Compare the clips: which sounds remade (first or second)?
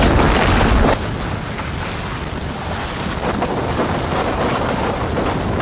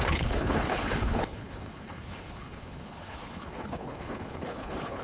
second